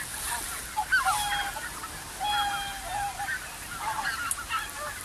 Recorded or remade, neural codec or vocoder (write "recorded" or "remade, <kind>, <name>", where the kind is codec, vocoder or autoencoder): recorded